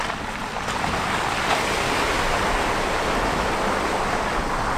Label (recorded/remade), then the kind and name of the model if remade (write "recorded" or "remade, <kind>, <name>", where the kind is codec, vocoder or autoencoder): recorded